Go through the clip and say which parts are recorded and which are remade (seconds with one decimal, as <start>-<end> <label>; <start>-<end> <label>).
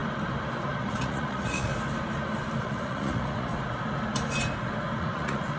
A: 0.0-0.6 recorded; 0.6-1.7 remade; 1.7-2.6 recorded; 2.6-3.5 remade; 3.5-5.0 recorded; 5.0-5.6 remade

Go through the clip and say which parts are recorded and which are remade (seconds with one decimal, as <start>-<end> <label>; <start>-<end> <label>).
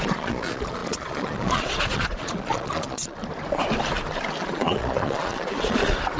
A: 0.0-3.2 remade; 3.2-4.4 recorded; 4.4-6.2 remade